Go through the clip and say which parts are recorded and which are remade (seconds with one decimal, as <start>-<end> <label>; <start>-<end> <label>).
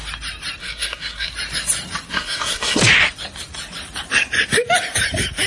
0.0-0.6 recorded; 0.6-1.3 remade; 1.3-2.1 recorded; 2.1-2.8 remade; 2.8-5.5 recorded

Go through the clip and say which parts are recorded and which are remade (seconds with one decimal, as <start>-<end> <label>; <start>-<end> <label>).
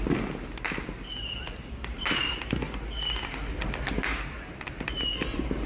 0.0-5.7 recorded